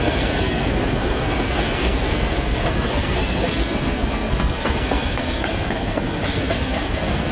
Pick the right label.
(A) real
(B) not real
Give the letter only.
B